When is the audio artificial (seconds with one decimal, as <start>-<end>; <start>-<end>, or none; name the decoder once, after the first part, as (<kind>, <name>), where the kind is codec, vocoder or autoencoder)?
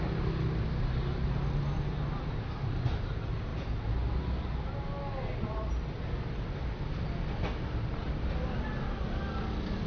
none